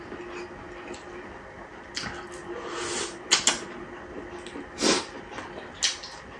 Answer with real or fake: real